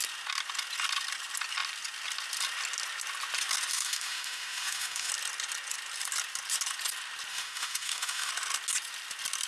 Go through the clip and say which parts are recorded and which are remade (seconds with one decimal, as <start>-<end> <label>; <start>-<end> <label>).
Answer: 0.0-3.7 recorded; 3.7-5.1 remade; 5.1-7.3 recorded; 7.3-8.3 remade; 8.3-9.5 recorded